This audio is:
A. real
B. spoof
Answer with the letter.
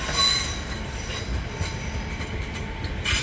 A